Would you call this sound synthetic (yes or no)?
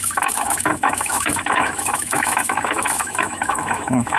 yes